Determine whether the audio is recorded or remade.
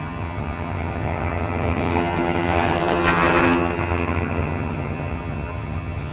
remade